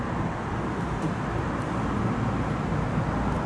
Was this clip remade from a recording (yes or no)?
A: no